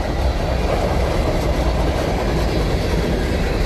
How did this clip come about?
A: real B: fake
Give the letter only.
A